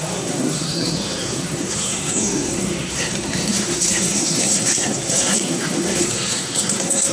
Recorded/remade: remade